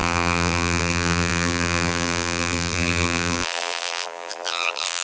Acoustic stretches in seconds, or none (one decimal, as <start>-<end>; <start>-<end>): none